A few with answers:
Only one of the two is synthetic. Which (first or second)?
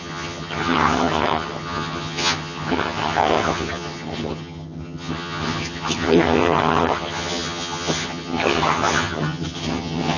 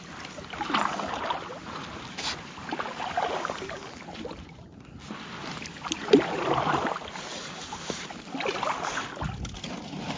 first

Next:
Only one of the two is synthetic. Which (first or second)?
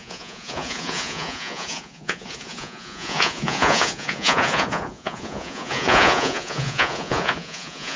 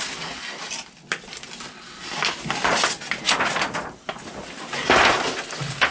first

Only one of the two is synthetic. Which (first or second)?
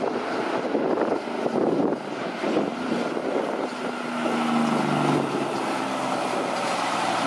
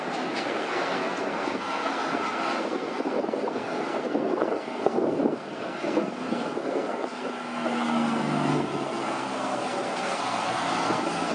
second